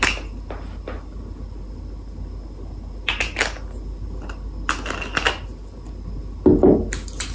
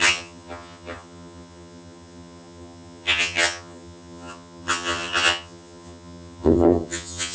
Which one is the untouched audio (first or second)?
first